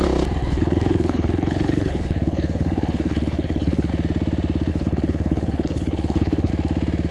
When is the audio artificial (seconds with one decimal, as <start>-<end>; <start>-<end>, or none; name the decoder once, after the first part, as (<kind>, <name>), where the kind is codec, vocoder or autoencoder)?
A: 0.4-3.9 (codec, HILCodec); 4.7-6.5